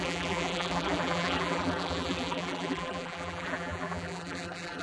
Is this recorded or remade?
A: remade